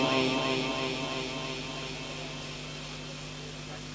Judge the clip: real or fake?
real